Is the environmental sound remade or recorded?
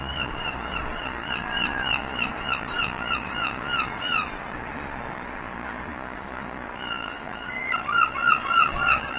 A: remade